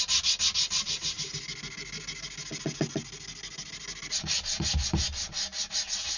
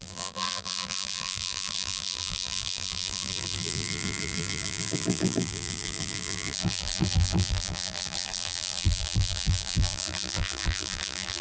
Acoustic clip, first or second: first